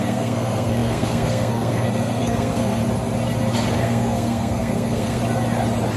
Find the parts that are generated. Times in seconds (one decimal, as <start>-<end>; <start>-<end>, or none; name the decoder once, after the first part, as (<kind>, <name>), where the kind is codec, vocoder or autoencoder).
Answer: 0.0-2.8 (codec, SNAC); 3.8-5.2